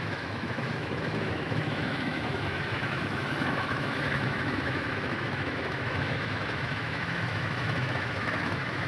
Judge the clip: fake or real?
fake